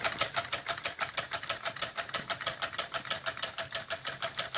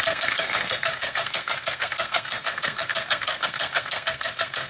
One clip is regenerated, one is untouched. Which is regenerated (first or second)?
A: second